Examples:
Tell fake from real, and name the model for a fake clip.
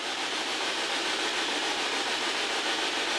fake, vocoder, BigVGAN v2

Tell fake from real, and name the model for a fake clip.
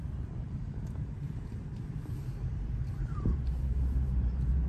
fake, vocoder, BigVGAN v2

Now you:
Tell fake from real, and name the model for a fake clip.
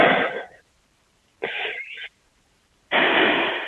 fake, vocoder, BigVGAN v2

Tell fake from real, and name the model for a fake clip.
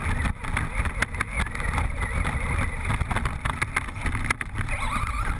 real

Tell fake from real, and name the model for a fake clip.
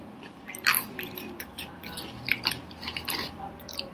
fake, vocoder, BigVGAN v2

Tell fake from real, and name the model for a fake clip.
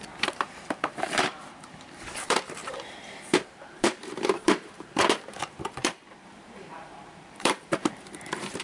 fake, vocoder, BigVGAN v2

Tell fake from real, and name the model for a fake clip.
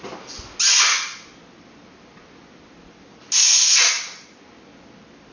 real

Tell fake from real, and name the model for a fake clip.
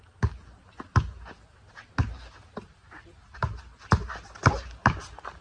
real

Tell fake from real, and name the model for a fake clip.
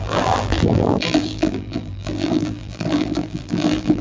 fake, vocoder, BigVGAN v2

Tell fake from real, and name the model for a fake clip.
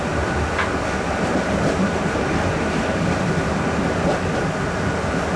fake, vocoder, BigVGAN v2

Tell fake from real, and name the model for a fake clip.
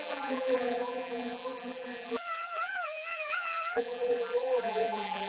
fake, vocoder, BigVGAN v2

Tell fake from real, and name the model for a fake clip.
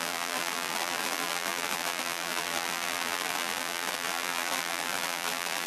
fake, vocoder, BigVGAN v2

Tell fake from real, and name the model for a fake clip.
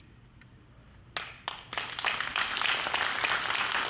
real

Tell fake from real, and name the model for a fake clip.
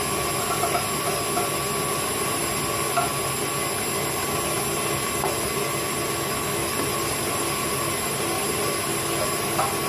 real